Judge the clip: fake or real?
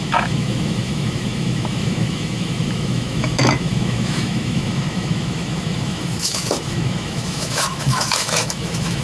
fake